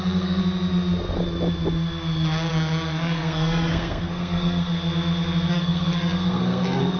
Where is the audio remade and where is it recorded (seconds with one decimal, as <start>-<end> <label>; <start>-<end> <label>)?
0.0-0.4 remade; 0.4-2.5 recorded; 2.5-4.7 remade; 4.7-5.5 recorded; 5.5-7.0 remade